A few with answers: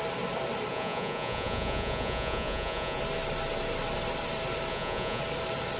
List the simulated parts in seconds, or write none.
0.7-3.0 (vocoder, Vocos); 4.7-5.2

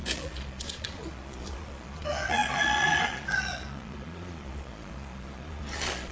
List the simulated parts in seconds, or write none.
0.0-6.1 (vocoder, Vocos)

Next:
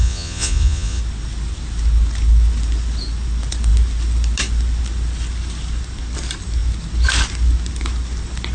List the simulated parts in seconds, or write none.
0.0-1.0 (vocoder, Vocos)

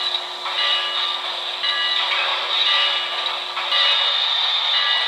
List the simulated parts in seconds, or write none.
none

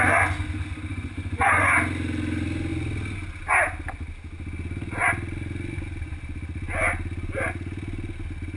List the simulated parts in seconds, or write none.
0.9-1.7 (vocoder, Vocos)

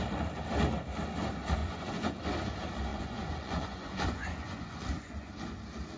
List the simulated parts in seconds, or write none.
1.6-2.2 (vocoder, Vocos); 2.9-5.3

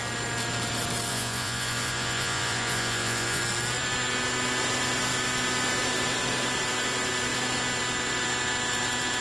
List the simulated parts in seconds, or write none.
1.1-3.4 (vocoder, Vocos)

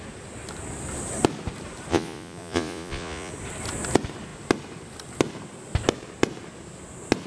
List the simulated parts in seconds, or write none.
1.9-3.3 (vocoder, Vocos)